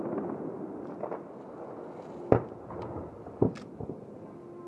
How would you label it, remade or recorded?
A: recorded